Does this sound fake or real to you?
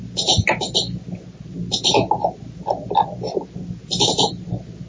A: real